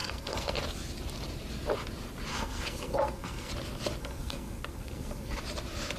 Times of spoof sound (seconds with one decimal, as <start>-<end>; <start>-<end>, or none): 0.0-0.6; 2.3-3.5; 4.0-5.4